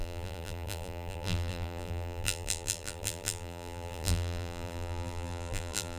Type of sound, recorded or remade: remade